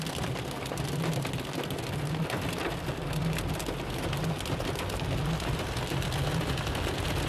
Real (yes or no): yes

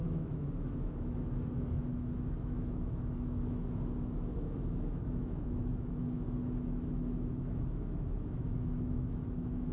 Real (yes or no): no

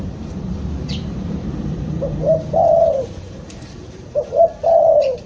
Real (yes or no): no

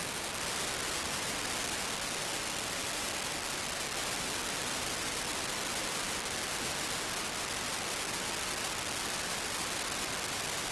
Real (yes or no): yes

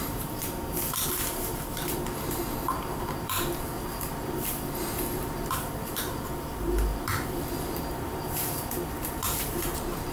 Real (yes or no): no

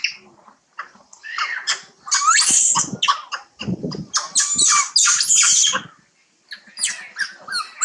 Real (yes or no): yes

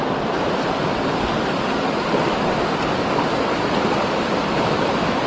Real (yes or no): yes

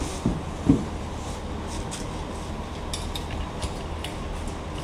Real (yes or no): yes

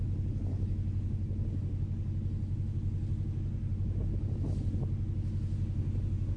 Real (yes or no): yes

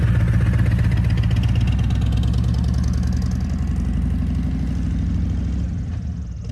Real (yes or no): yes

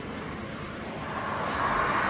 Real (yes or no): yes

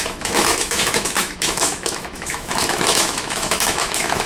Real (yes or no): no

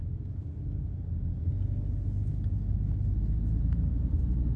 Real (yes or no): yes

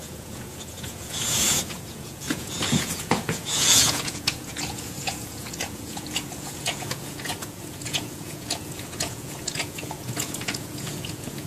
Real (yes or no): no